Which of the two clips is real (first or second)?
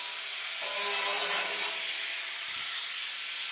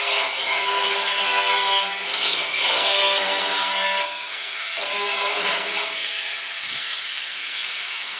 first